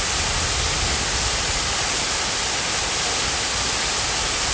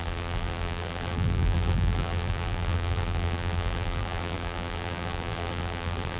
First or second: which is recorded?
first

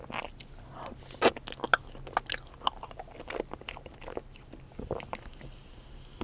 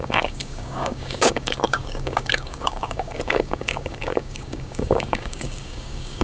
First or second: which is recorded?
first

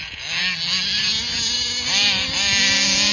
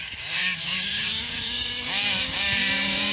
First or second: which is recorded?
first